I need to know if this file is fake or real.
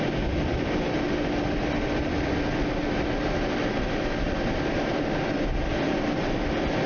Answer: real